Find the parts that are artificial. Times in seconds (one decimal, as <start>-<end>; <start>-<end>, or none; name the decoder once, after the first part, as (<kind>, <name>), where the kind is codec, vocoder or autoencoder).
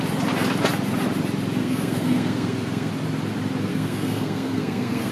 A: 1.6-2.9 (codec, SNAC); 3.7-5.1